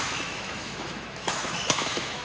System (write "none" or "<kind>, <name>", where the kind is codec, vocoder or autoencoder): autoencoder, DAC-VAE